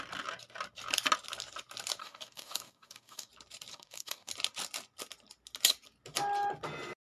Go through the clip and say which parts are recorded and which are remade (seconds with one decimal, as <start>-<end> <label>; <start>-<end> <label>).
0.0-2.0 recorded; 2.0-3.3 remade; 3.3-3.7 recorded; 3.7-4.3 remade; 4.3-7.0 recorded